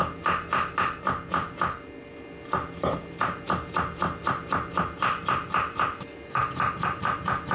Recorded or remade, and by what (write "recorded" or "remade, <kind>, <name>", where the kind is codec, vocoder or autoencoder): recorded